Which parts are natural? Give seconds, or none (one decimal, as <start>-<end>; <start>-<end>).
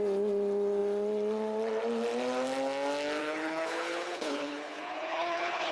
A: 0.0-3.2